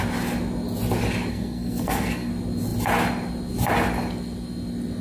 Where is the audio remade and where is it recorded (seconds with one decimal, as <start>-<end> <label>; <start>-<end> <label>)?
0.0-1.3 recorded; 1.3-2.3 remade; 2.3-5.0 recorded